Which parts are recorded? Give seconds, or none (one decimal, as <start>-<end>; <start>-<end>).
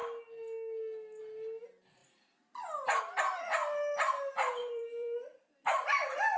0.0-4.6